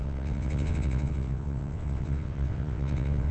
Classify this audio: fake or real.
fake